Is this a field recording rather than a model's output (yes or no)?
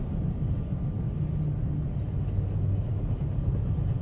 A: yes